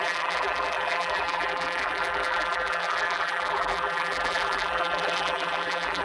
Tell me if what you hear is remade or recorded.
remade